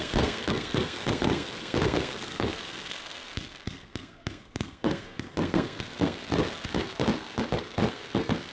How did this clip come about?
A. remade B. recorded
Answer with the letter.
A